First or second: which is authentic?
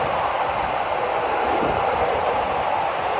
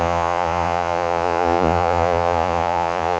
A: first